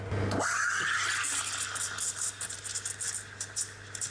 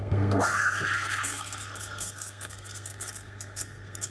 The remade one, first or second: second